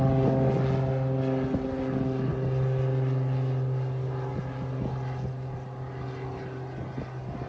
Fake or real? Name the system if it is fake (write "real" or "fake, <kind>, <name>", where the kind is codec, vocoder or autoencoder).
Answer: real